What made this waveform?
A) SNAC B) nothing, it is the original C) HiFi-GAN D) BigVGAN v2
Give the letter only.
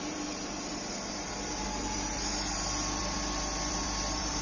D